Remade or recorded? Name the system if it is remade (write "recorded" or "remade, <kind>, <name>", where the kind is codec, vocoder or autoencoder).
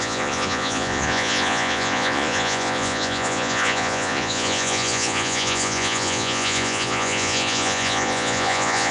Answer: remade, vocoder, Vocos